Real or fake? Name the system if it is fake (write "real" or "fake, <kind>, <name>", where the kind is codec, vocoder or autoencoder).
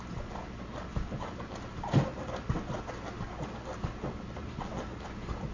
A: real